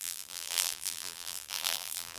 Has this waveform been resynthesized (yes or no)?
yes